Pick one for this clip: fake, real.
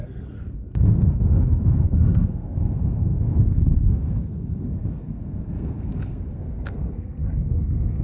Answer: fake